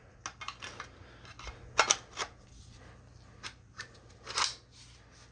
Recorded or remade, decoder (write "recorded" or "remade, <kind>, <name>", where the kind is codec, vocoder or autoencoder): recorded